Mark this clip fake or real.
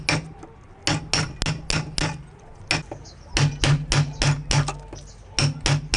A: real